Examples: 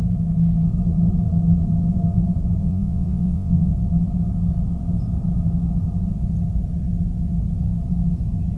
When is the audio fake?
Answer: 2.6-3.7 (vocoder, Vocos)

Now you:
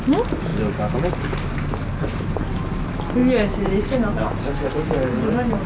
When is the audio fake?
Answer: none